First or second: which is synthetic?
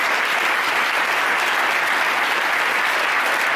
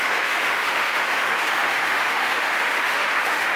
second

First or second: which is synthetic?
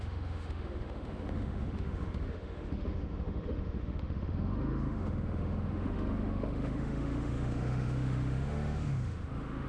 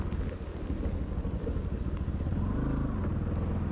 first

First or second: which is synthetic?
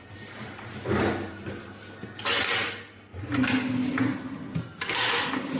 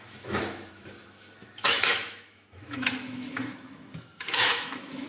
second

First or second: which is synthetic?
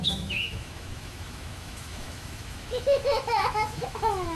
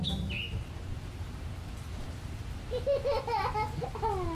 first